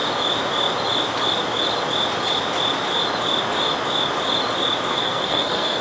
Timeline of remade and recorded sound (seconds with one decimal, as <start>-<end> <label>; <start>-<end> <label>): 0.0-4.9 recorded; 4.9-5.8 remade